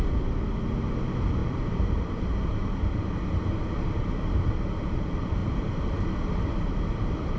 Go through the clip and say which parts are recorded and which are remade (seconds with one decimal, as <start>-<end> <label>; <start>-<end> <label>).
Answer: 0.0-1.4 recorded; 1.4-4.5 remade; 4.5-5.4 recorded; 5.4-7.4 remade